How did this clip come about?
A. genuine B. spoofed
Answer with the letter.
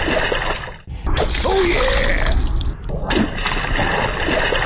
A